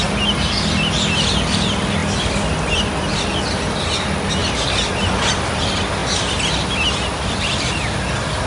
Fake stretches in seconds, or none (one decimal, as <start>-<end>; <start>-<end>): none